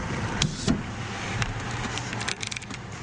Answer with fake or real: fake